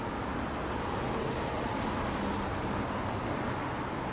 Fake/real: real